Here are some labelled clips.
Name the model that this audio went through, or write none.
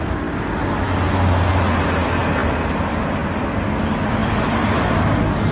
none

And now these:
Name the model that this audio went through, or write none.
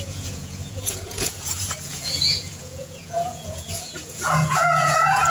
vocoder, Vocos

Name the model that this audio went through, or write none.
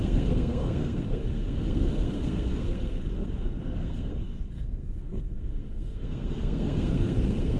codec, SNAC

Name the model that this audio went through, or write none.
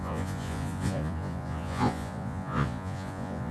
vocoder, Vocos